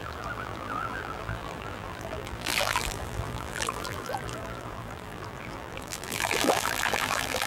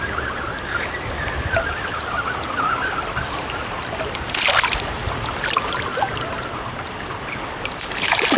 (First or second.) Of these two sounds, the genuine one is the second